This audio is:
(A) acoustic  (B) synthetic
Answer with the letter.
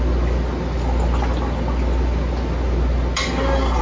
A